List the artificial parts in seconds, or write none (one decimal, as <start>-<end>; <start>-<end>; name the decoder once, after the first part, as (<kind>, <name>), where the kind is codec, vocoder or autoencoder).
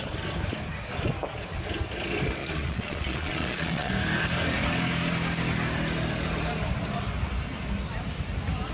2.4-3.9 (vocoder, Vocos)